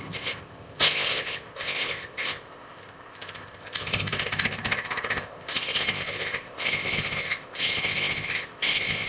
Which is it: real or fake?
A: fake